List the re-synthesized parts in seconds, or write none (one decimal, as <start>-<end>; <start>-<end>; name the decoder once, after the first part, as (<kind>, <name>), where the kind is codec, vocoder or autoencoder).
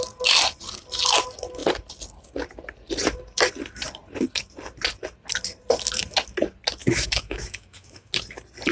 6.8-8.1 (autoencoder, DAC-VAE)